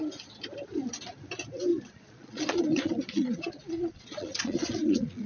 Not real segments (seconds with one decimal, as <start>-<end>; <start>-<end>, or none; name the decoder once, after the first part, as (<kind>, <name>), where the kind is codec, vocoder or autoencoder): 1.7-5.3 (vocoder, Vocos)

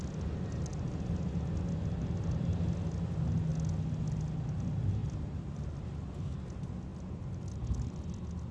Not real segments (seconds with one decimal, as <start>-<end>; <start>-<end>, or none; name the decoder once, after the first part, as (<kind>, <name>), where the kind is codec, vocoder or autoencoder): 0.7-1.3 (vocoder, BigVGAN v2); 5.0-5.6; 6.9-7.6

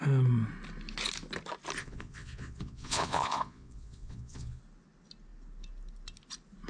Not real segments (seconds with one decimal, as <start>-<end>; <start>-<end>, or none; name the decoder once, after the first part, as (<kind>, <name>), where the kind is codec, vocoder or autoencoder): 1.8-4.6 (vocoder, Vocos)